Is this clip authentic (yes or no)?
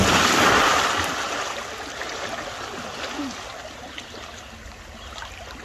yes